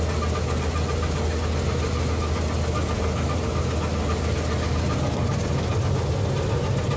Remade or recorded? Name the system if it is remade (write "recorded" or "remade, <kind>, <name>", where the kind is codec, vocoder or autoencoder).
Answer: recorded